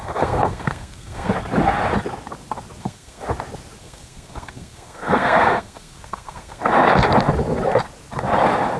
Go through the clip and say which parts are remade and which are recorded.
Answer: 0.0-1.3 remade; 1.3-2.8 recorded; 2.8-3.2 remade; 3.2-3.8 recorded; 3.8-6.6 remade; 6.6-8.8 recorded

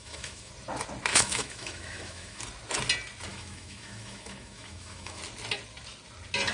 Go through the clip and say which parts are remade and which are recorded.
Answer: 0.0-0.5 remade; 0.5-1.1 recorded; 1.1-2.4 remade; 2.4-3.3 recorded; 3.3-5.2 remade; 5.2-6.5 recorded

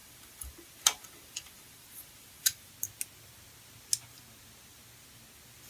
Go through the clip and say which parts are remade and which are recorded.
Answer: 0.0-2.7 remade; 2.7-5.7 recorded

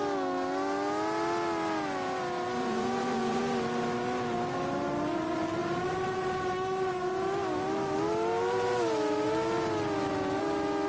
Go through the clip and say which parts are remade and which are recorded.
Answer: 0.0-2.6 recorded; 2.6-3.4 remade; 3.4-10.9 recorded

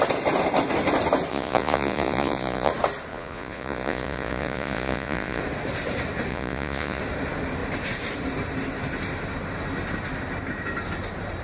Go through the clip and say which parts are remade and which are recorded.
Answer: 0.0-1.3 recorded; 1.3-2.7 remade; 2.7-3.1 recorded; 3.1-5.4 remade; 5.4-6.3 recorded; 6.3-7.0 remade; 7.0-11.4 recorded